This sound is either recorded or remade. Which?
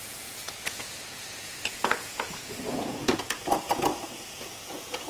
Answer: remade